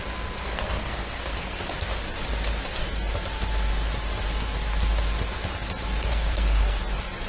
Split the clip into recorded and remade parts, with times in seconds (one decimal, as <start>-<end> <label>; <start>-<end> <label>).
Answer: 0.0-0.4 recorded; 0.4-1.6 remade; 1.6-6.1 recorded; 6.1-6.8 remade; 6.8-7.3 recorded